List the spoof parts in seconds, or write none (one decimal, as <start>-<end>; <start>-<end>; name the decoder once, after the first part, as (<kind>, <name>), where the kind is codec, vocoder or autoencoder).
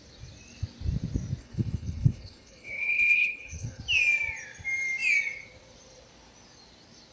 1.4-3.8 (codec, HILCodec)